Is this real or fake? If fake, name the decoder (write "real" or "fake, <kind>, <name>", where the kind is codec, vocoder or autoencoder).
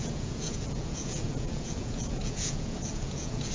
fake, vocoder, Vocos